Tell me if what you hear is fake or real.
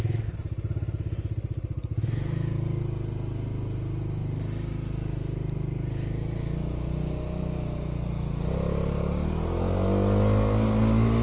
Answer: real